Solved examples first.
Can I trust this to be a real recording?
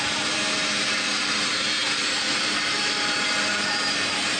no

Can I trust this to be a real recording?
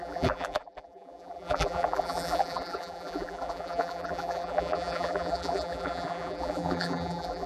no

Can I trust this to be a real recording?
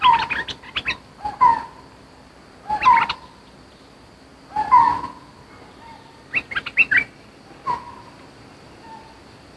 yes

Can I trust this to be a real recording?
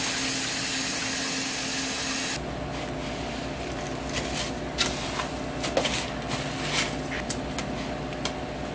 yes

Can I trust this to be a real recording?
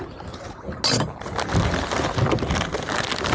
yes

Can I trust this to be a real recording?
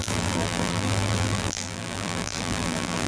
no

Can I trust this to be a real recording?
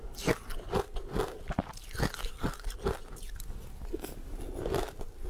yes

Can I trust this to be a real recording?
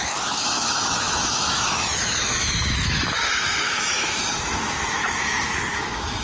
no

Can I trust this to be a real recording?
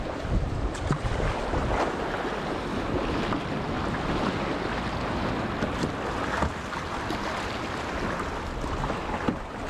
yes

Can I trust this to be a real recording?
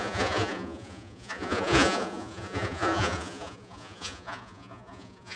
no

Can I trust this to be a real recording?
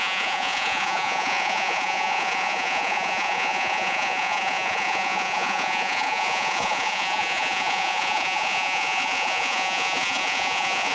no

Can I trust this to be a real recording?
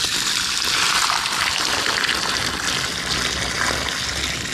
yes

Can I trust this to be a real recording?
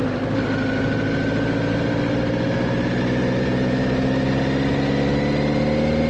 yes